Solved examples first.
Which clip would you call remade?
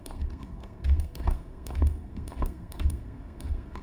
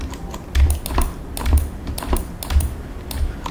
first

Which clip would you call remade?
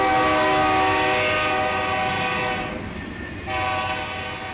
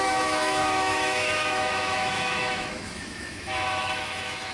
second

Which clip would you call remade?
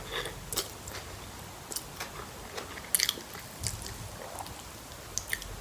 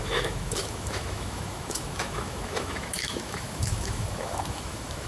second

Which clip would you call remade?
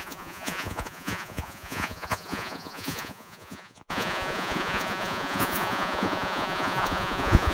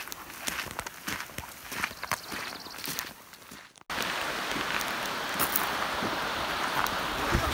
first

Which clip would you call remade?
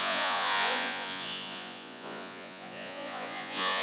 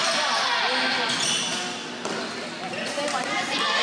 first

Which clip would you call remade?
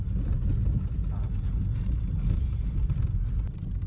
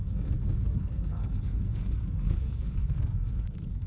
second